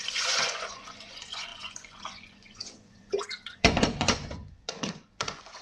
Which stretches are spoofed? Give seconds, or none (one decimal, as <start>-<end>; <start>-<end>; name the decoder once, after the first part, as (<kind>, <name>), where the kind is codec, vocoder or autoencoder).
0.0-5.6 (vocoder, Vocos)